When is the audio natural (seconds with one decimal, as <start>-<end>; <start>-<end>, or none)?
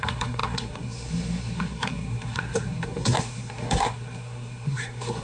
none